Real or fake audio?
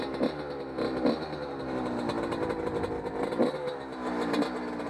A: real